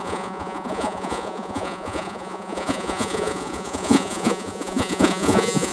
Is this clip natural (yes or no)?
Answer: no